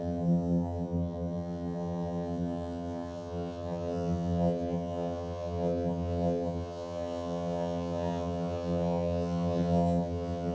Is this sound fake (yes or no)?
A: yes